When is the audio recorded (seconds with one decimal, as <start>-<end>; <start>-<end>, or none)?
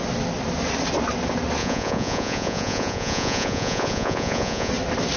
0.0-1.6; 4.7-5.2